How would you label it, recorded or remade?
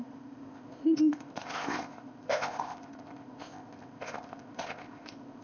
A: remade